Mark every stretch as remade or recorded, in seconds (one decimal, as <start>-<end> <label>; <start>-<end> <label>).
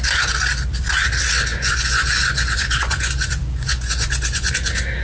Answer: 0.0-1.5 recorded; 1.5-4.5 remade; 4.5-5.0 recorded